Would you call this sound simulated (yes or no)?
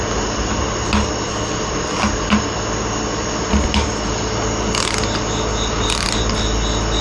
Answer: no